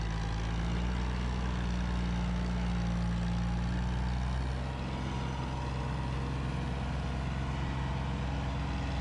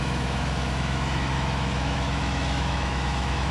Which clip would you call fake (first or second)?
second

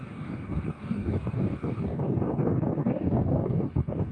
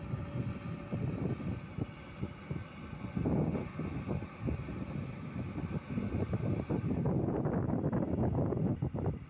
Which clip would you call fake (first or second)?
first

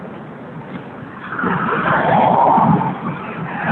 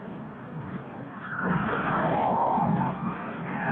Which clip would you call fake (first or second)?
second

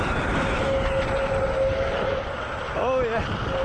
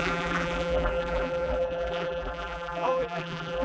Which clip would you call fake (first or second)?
second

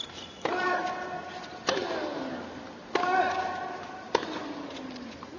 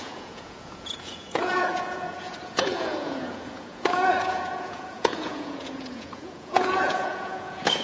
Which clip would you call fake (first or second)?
second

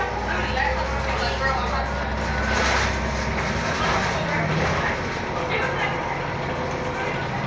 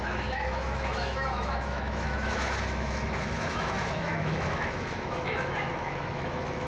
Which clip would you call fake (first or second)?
second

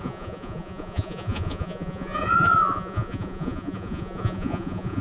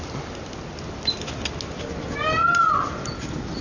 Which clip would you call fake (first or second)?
first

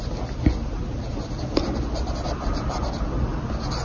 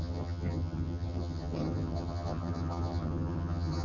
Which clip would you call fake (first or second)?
second